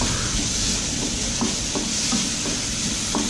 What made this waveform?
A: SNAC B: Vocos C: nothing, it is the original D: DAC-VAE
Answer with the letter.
C